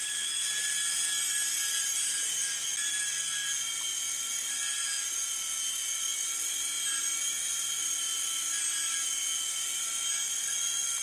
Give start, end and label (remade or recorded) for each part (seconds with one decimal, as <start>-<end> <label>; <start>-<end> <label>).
0.0-0.5 remade; 0.5-11.0 recorded